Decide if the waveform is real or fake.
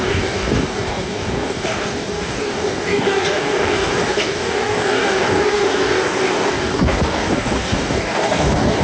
fake